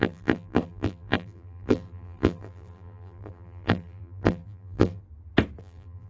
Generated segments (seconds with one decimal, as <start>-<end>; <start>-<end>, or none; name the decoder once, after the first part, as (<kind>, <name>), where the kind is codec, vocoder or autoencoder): 0.0-5.0 (vocoder, BigVGAN v2); 5.6-6.1